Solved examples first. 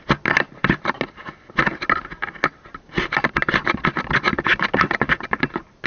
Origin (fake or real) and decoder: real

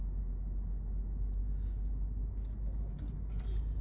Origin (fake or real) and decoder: real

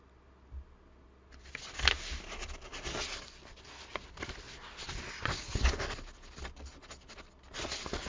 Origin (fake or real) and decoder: real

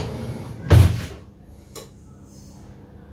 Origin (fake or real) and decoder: real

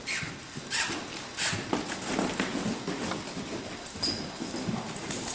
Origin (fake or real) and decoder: real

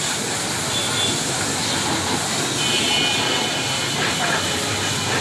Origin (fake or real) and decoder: real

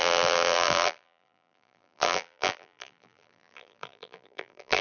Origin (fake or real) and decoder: fake, vocoder, BigVGAN v2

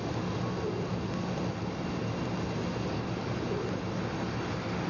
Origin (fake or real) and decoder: real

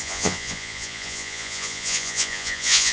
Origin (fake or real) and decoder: fake, vocoder, Vocos